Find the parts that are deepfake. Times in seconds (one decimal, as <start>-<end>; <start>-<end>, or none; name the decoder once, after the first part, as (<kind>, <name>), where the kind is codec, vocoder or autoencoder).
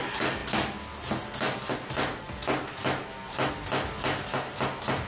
none